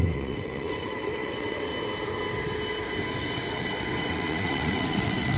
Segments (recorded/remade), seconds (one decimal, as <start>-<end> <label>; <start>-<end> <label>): 0.0-1.7 remade; 1.7-3.2 recorded; 3.2-5.4 remade

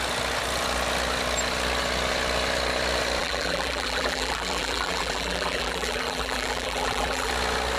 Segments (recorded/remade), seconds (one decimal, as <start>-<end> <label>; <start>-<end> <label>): 0.0-3.2 recorded; 3.2-7.3 remade; 7.3-7.8 recorded